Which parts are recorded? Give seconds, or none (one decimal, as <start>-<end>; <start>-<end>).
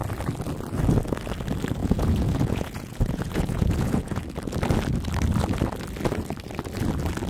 0.0-1.8; 4.2-7.3